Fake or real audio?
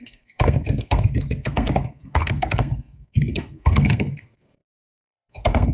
fake